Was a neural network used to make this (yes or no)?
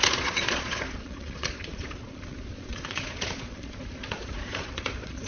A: yes